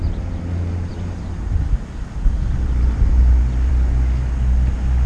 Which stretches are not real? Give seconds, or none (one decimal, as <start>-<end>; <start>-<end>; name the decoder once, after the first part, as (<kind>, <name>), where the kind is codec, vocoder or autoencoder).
none